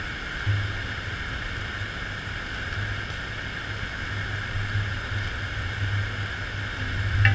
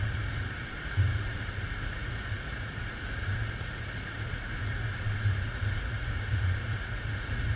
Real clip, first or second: first